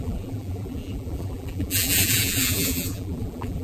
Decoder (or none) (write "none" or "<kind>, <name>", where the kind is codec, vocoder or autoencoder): vocoder, BigVGAN v2